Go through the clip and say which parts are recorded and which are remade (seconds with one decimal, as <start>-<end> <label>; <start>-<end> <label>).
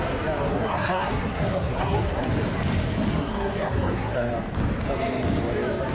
0.0-0.5 recorded; 0.5-2.3 remade; 2.3-3.1 recorded; 3.1-4.3 remade; 4.3-5.9 recorded